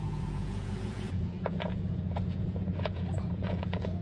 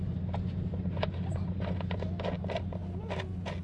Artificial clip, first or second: first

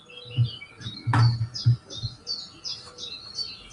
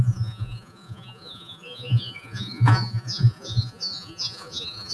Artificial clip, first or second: second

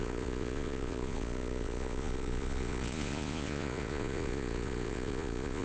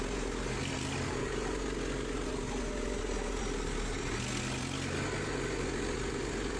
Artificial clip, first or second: first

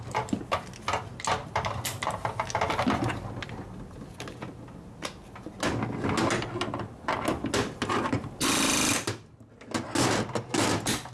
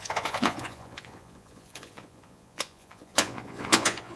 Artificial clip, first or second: second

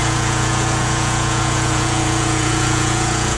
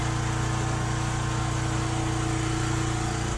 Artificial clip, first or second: first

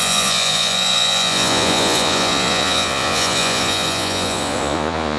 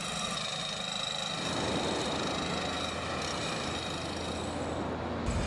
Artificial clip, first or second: first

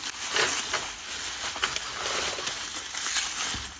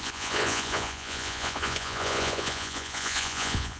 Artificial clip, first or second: second